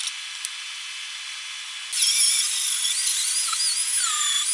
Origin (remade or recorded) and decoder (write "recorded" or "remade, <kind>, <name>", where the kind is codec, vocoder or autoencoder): recorded